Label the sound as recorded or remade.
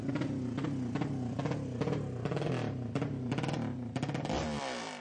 recorded